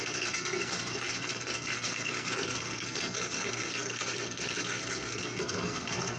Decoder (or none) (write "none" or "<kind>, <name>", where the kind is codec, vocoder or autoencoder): codec, SNAC